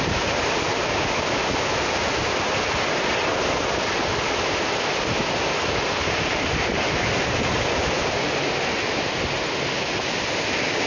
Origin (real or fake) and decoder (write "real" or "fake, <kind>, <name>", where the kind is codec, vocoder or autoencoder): real